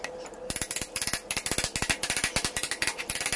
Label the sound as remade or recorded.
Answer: recorded